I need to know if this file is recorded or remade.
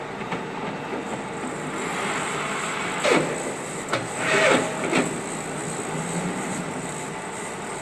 recorded